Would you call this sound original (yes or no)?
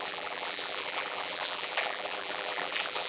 no